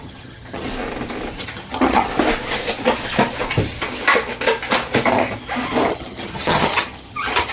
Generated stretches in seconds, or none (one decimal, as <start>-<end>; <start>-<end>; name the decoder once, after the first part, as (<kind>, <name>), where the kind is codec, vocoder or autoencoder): 0.0-0.7 (vocoder, HiFi-GAN); 1.4-2.1; 5.9-7.5